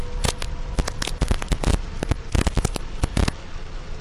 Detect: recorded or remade recorded